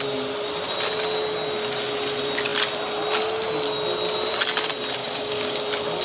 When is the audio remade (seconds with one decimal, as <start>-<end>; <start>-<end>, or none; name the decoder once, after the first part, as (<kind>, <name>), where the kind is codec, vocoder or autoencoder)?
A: 5.0-5.6 (codec, DAC)